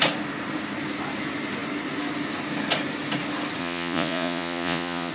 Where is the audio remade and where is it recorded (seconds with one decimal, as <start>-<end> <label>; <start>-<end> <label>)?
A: 0.0-3.6 recorded; 3.6-5.1 remade